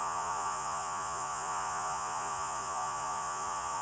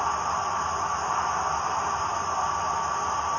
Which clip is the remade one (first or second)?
first